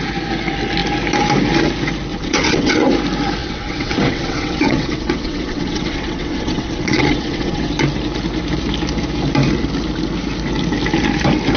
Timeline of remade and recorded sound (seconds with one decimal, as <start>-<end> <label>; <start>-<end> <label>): 0.0-2.1 recorded; 2.1-2.9 remade; 2.9-3.4 recorded; 3.4-7.7 remade; 7.7-11.6 recorded

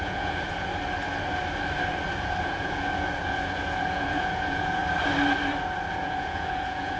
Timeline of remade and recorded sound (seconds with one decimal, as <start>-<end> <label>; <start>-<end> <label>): 0.0-0.7 remade; 0.7-2.4 recorded; 2.4-4.8 remade; 4.8-5.9 recorded; 5.9-7.0 remade

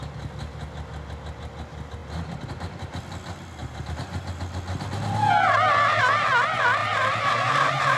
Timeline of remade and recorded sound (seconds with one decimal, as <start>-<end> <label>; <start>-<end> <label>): 0.0-3.6 recorded; 3.6-4.4 remade; 4.4-6.8 recorded; 6.8-8.0 remade